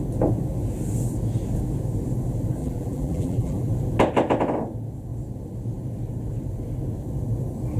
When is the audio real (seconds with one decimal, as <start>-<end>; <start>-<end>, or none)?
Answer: 0.0-2.6; 3.7-7.8